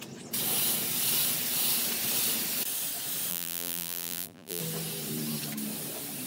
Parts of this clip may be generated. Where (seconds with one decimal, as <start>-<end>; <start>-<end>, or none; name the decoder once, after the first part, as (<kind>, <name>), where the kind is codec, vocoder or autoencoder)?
3.3-4.6 (vocoder, BigVGAN v2)